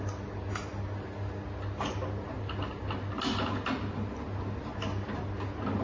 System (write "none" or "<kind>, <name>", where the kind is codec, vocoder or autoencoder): none